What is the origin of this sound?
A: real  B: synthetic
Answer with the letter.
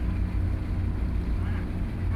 A